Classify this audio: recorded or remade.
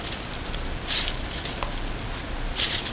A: recorded